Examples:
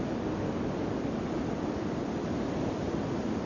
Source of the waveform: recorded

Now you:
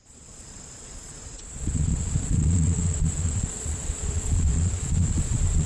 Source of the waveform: remade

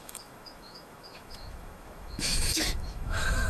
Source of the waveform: remade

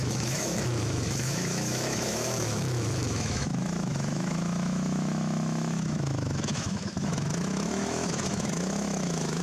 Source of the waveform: remade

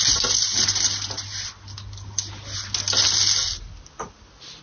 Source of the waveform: recorded